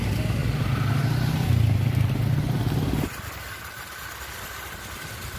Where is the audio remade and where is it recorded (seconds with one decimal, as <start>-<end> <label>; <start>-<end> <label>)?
0.0-5.4 recorded